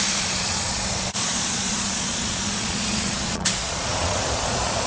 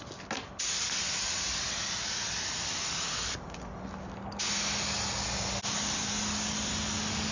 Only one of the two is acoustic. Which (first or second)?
second